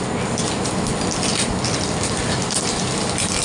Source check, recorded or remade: recorded